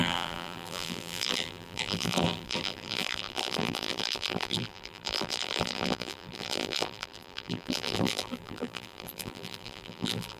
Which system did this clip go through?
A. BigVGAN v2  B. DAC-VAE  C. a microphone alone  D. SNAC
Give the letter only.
A